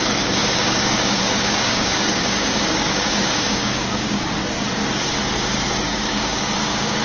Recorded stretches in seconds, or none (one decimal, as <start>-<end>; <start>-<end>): 4.4-5.8